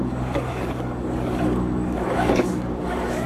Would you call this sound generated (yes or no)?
yes